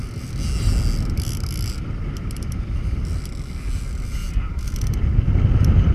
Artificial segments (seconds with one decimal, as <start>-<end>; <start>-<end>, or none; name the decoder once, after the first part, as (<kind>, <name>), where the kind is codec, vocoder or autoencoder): none